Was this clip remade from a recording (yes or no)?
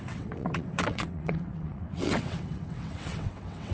yes